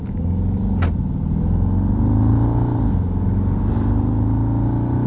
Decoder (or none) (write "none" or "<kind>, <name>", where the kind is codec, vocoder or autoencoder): none